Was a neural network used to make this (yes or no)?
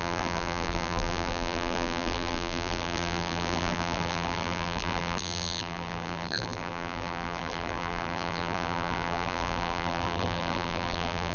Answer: yes